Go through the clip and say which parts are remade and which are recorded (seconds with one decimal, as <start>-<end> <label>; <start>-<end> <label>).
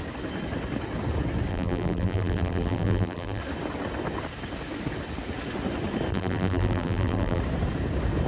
0.0-1.5 recorded; 1.5-3.4 remade; 3.4-6.1 recorded; 6.1-7.4 remade; 7.4-8.3 recorded